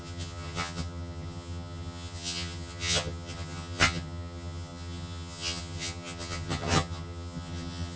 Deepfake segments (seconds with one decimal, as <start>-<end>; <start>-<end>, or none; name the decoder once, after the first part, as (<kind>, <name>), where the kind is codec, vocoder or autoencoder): 0.0-8.0 (vocoder, HiFi-GAN)